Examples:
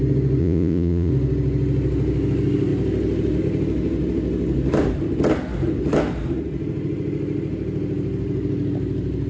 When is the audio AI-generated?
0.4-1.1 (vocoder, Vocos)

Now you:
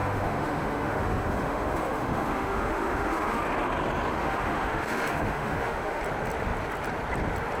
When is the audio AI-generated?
0.0-3.4 (autoencoder, DAC-VAE); 4.1-6.0

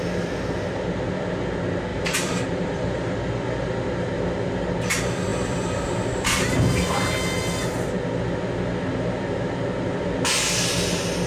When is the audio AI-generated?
1.9-3.7 (vocoder, BigVGAN v2); 5.3-6.3

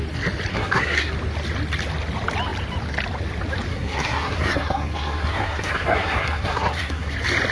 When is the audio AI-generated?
0.5-1.1 (codec, SNAC); 3.7-7.1

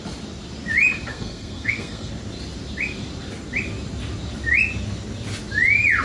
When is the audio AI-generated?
1.1-2.1 (codec, SNAC)

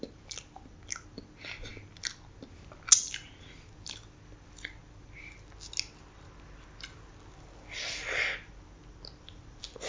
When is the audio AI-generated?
none